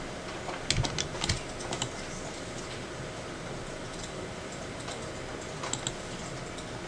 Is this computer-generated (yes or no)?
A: no